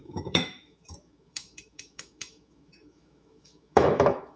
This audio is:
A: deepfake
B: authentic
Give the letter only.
A